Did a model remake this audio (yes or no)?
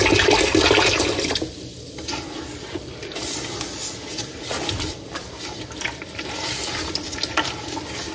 no